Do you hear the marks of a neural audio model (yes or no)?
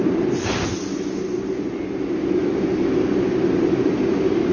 no